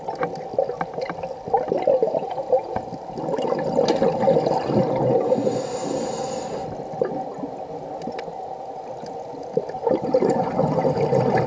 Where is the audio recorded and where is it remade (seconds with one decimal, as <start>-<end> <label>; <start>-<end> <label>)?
0.0-2.0 recorded; 2.0-2.8 remade; 2.8-11.5 recorded